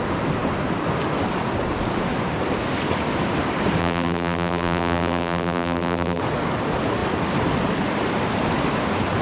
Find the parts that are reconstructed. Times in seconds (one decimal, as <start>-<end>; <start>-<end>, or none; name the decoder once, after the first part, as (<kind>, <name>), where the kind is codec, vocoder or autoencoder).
3.8-6.2 (vocoder, BigVGAN v2)